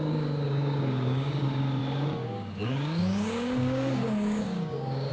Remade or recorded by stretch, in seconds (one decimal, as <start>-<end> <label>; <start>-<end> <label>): 0.0-5.1 remade